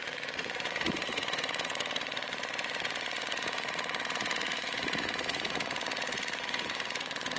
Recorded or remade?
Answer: remade